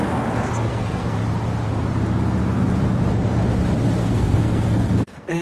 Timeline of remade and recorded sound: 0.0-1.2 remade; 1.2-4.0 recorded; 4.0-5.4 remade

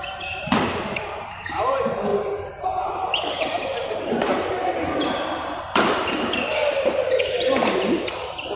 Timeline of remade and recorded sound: 0.0-8.6 remade

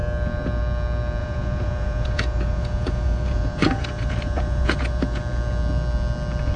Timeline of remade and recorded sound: 0.0-1.2 recorded; 1.2-5.2 remade; 5.2-6.6 recorded

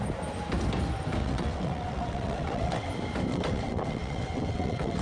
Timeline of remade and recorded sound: 0.0-1.2 recorded; 1.2-2.9 remade; 2.9-3.3 recorded; 3.3-5.0 remade

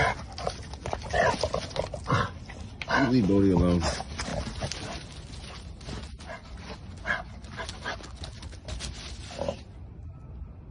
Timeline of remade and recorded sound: 0.0-10.7 recorded

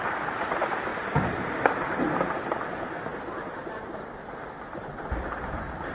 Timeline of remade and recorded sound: 0.0-5.9 recorded